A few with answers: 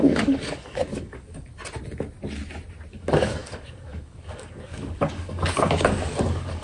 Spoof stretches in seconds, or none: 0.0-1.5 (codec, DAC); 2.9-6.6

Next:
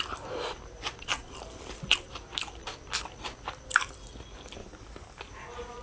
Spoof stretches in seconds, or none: 4.6-5.2 (codec, DAC)